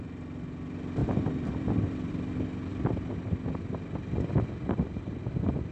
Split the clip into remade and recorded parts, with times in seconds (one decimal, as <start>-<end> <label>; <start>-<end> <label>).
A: 0.0-1.0 recorded; 1.0-2.1 remade; 2.1-5.7 recorded